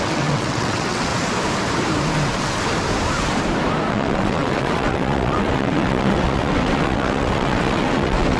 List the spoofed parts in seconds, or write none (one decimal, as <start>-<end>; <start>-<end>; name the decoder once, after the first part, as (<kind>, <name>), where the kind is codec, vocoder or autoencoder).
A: 0.0-1.1 (vocoder, WaveNeXt); 3.9-8.4